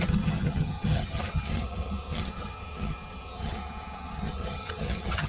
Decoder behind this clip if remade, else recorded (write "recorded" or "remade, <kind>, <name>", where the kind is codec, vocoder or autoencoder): remade, vocoder, HiFi-GAN